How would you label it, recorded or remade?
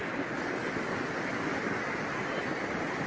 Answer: recorded